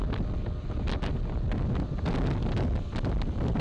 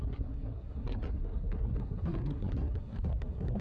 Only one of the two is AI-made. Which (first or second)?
second